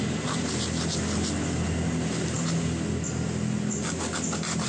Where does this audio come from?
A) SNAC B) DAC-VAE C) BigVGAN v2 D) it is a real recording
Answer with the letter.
D